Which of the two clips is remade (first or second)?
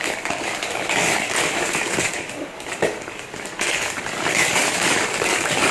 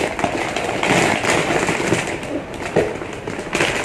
first